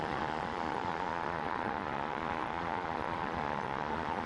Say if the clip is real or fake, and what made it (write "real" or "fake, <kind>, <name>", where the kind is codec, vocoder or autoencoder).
fake, vocoder, Vocos